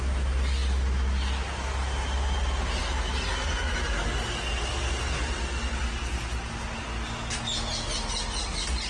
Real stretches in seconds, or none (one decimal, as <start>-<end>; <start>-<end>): 0.0-8.9